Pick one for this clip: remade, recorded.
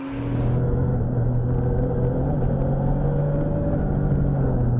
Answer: recorded